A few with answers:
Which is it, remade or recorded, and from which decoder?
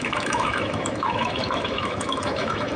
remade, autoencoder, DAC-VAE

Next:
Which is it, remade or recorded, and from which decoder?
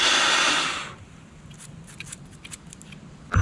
recorded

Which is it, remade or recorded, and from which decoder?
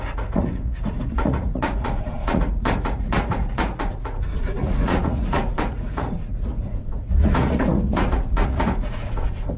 remade, vocoder, Vocos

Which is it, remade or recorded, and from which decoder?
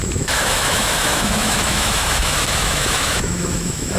remade, autoencoder, DAC-VAE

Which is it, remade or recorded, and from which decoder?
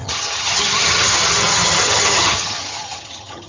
remade, vocoder, HiFi-GAN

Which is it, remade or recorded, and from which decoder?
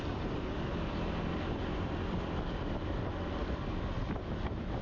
recorded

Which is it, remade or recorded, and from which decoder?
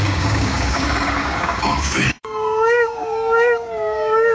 remade, codec, DAC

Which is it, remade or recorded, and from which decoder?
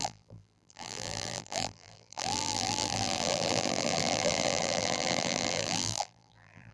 remade, vocoder, BigVGAN v2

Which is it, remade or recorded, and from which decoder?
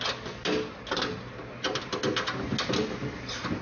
recorded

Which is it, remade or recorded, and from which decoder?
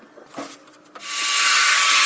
recorded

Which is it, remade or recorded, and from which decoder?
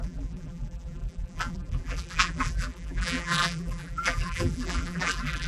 remade, vocoder, BigVGAN v2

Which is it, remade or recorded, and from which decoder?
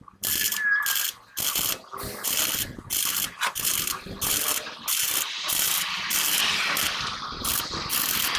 recorded